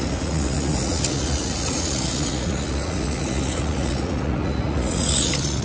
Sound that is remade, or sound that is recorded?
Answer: remade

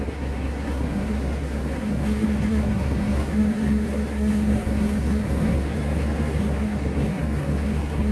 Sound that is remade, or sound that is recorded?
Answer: remade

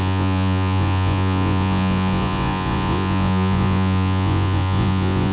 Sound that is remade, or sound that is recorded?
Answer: remade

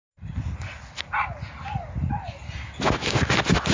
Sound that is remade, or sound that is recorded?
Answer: recorded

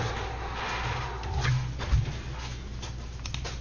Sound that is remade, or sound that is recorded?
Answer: recorded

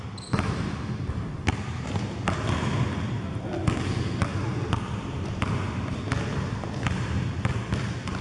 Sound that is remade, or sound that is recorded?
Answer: recorded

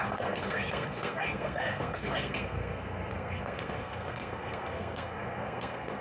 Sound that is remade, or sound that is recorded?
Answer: remade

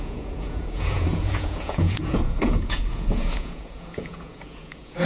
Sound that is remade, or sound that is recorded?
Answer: remade